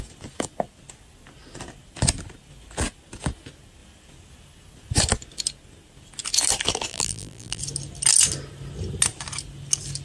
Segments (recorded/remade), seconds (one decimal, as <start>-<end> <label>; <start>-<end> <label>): 0.0-6.9 recorded; 6.9-7.6 remade; 7.6-10.0 recorded